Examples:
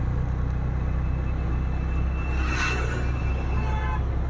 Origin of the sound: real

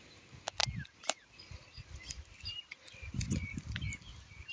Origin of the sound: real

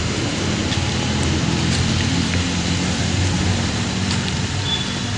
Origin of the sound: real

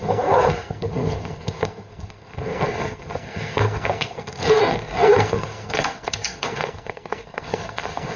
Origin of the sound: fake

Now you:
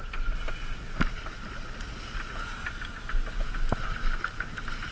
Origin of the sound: real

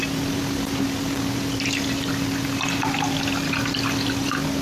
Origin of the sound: real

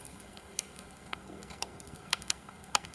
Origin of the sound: fake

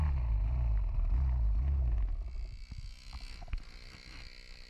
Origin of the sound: real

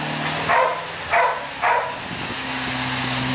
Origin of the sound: real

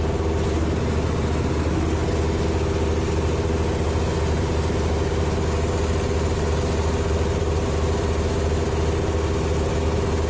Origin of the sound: real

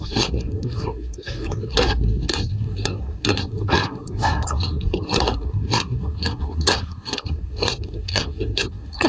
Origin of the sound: fake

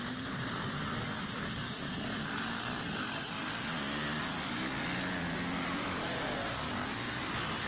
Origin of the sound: real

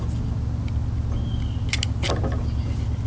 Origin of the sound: real